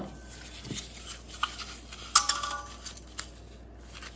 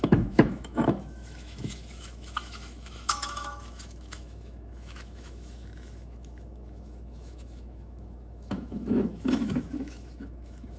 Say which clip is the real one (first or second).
first